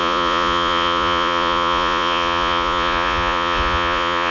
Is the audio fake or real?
fake